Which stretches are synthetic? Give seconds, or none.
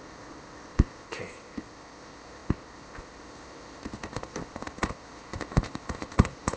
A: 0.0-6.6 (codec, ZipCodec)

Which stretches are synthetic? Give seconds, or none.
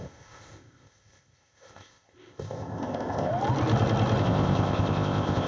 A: 0.0-3.3 (codec, ZipCodec); 4.2-5.5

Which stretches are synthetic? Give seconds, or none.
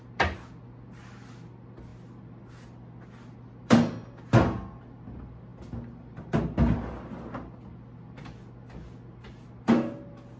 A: none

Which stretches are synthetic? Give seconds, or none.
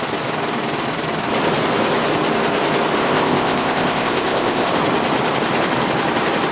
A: 3.0-4.7 (codec, ZipCodec)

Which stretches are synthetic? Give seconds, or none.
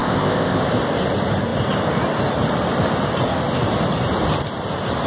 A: 0.0-0.6 (codec, ZipCodec)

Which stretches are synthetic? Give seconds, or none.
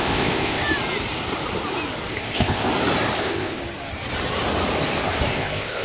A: 0.0-0.6 (codec, ZipCodec); 2.1-2.7; 3.2-3.6; 5.3-5.8